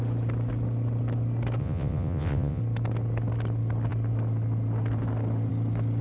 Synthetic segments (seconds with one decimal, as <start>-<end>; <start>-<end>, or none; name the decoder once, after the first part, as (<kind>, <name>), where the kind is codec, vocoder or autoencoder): 1.6-2.6 (vocoder, WaveNeXt)